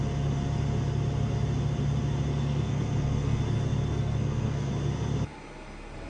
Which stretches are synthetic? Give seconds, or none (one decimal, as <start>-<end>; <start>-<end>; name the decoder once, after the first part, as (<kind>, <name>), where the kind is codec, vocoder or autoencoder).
2.3-3.4 (codec, SNAC); 3.9-4.7

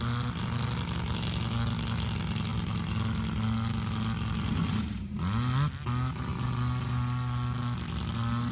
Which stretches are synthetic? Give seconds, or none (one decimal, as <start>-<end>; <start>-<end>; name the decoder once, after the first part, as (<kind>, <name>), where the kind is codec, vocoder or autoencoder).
none

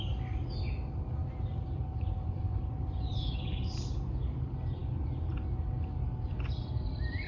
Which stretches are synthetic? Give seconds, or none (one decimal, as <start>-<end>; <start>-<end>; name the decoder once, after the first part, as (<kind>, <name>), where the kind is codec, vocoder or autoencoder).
1.2-3.2 (vocoder, BigVGAN v2)

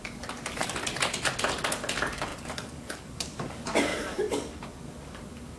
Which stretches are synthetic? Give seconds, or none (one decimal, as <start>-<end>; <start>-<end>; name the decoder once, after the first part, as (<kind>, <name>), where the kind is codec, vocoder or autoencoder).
0.0-0.6 (codec, DAC); 1.7-5.6

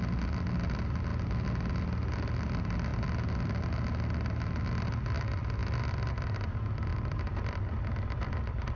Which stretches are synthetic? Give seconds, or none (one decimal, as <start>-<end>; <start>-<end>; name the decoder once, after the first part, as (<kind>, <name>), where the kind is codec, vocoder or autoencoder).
none

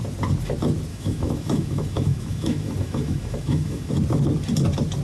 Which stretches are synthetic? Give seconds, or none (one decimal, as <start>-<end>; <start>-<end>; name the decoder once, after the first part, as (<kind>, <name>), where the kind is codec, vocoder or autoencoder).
0.9-3.9 (autoencoder, DAC-VAE)

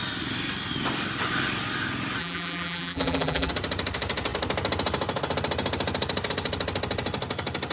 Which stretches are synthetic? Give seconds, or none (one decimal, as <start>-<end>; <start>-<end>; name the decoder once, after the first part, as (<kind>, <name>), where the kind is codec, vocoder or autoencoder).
2.2-3.5 (vocoder, BigVGAN v2)